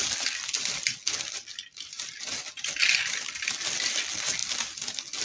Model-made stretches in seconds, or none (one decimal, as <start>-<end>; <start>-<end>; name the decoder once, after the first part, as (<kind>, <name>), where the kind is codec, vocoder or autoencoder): 1.5-2.1 (vocoder, BigVGAN v2)